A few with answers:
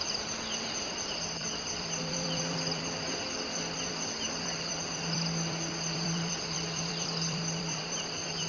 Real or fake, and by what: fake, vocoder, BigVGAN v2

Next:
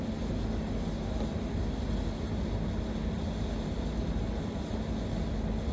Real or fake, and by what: real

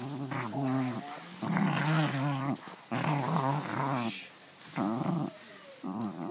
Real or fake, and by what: real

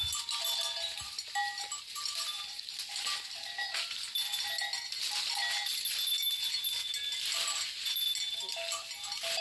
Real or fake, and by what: real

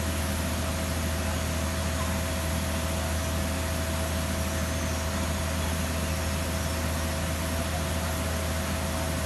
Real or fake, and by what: real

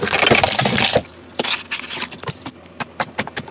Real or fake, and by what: real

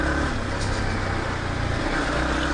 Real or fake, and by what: real